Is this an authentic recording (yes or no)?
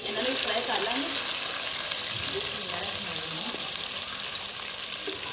yes